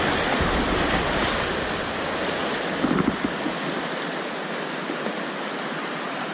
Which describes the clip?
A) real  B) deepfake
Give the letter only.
A